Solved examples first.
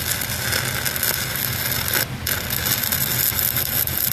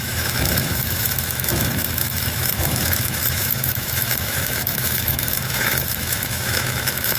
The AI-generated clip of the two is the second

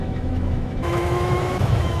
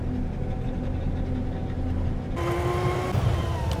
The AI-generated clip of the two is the first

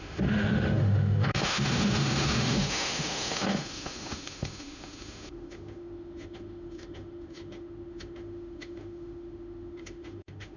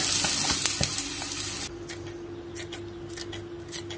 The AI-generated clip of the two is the first